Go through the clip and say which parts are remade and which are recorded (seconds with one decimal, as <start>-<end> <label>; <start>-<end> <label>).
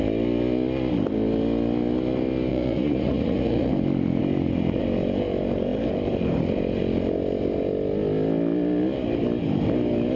0.0-2.5 recorded; 2.5-3.7 remade; 3.7-10.2 recorded